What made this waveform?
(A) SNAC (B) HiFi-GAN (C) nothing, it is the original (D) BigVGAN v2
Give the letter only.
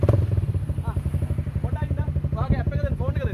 C